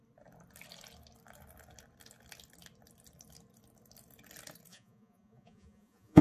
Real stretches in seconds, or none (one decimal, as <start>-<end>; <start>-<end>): 0.0-4.7